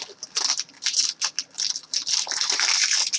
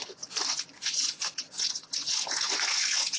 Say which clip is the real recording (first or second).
first